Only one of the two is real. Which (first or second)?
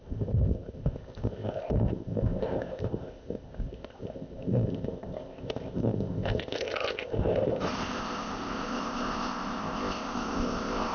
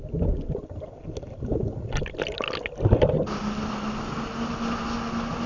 second